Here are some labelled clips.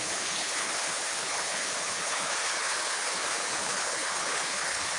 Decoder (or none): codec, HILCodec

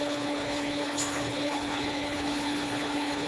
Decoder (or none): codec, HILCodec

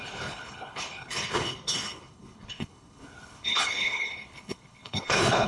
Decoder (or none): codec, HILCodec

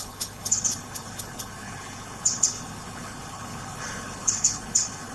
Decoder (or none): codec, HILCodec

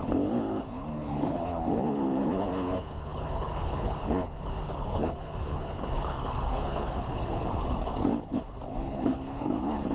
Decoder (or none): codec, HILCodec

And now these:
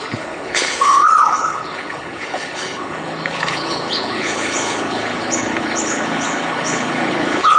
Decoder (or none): codec, HILCodec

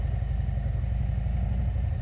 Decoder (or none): none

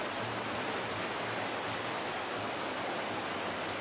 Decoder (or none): none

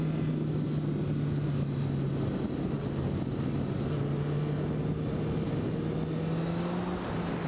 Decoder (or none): none